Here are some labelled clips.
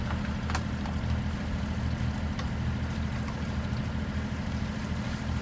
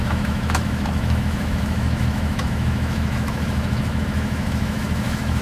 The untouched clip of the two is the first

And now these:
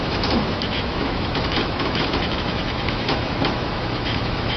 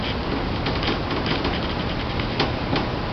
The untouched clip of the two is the second